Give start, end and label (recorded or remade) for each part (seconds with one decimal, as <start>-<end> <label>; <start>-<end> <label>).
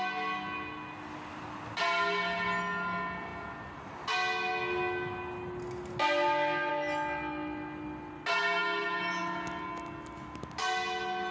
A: 0.0-11.3 recorded